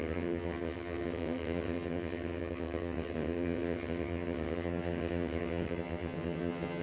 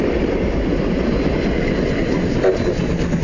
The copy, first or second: first